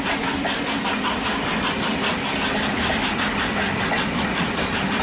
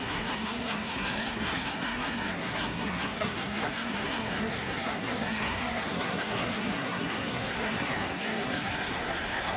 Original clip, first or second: first